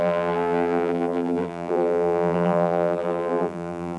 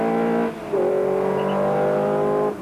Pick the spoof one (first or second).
first